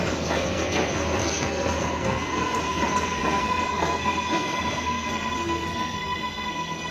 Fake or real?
fake